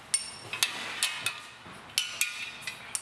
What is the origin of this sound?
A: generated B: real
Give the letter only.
B